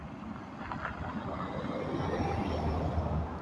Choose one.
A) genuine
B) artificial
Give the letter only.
A